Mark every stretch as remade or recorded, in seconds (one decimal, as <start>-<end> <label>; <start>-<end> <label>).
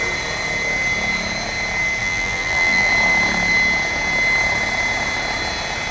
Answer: 0.0-2.0 recorded; 2.0-2.9 remade; 2.9-5.9 recorded